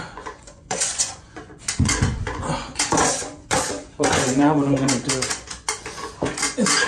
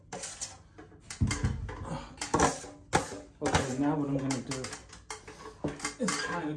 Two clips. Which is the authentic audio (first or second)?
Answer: second